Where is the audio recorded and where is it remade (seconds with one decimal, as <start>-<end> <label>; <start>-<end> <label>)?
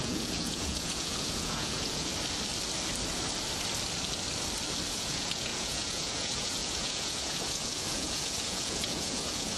0.0-2.1 remade; 2.1-4.9 recorded; 4.9-9.6 remade